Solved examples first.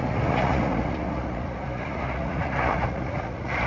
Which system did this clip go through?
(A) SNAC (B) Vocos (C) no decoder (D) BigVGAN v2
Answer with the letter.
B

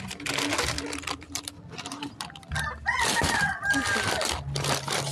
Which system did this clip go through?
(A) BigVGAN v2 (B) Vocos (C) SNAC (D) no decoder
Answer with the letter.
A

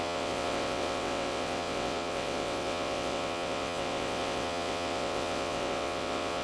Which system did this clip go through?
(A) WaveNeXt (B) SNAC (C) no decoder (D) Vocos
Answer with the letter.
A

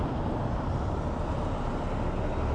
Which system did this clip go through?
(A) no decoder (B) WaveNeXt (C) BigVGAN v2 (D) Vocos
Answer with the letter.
A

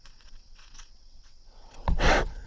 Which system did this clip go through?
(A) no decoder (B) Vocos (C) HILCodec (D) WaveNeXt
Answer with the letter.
D